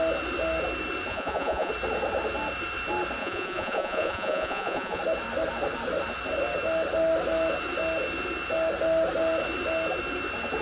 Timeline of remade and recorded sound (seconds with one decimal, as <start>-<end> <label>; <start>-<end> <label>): 0.0-1.1 recorded; 1.1-1.7 remade; 1.7-3.2 recorded; 3.2-5.0 remade; 5.0-10.6 recorded